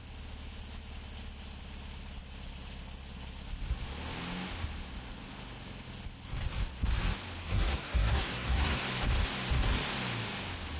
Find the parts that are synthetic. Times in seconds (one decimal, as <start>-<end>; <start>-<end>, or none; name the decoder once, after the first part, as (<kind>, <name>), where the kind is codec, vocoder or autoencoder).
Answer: 7.4-8.8 (codec, SNAC)